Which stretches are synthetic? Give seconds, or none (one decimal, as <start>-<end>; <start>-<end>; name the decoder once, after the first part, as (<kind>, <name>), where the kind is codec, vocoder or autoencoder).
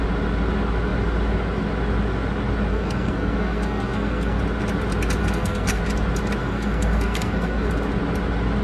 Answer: 2.7-4.4 (codec, SNAC); 5.2-5.8; 6.4-7.7